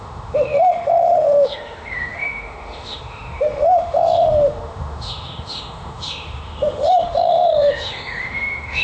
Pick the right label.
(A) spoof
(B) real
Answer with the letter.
A